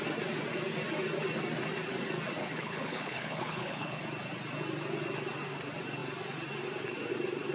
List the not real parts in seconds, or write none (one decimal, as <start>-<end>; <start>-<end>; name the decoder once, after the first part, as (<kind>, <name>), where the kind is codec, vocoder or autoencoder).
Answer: 2.4-4.0 (codec, HILCodec)